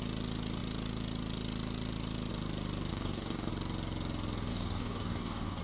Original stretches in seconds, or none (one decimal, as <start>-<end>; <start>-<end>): 0.0-2.9; 3.5-4.5